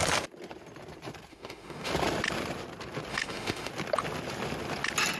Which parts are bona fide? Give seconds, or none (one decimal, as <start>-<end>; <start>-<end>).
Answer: 0.0-1.3; 1.9-3.1; 3.7-5.2